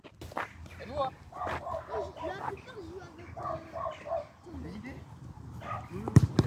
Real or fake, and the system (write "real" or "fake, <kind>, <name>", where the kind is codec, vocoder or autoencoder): real